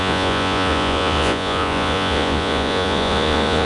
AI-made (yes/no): yes